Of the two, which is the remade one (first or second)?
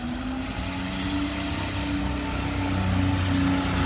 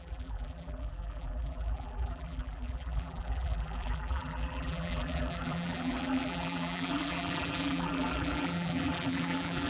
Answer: second